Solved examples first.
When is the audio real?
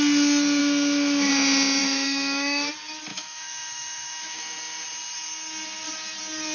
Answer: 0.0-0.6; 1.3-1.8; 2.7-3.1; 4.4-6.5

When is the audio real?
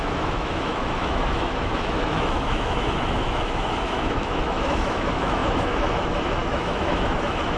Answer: none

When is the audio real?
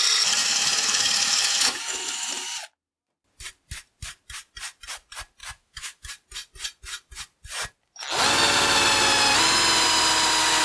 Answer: 0.0-0.4; 2.3-5.4; 6.1-10.6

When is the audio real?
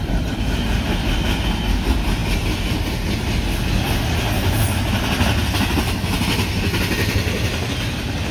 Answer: 0.0-8.3